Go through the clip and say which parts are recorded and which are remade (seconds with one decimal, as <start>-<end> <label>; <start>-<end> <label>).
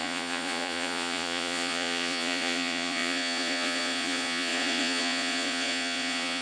0.0-6.4 remade